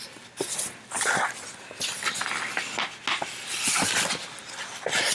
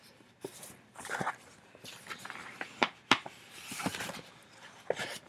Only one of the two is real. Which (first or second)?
first